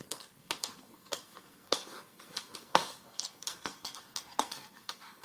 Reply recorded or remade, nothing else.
remade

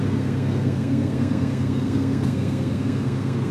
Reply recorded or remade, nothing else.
remade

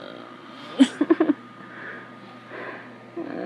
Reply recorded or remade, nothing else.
recorded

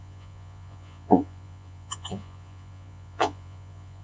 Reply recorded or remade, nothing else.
remade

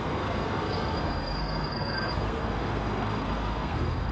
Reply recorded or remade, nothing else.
remade